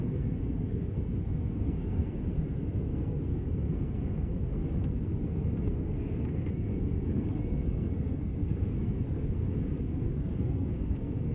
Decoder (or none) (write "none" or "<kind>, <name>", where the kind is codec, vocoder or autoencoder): codec, SNAC